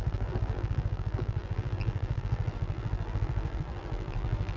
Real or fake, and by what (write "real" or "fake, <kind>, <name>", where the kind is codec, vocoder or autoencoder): fake, vocoder, BigVGAN v2